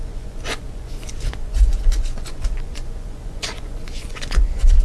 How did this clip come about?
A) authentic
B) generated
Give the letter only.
B